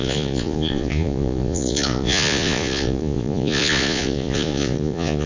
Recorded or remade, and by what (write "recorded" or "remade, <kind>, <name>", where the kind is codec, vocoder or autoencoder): remade, vocoder, Vocos